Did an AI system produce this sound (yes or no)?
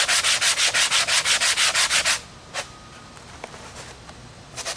no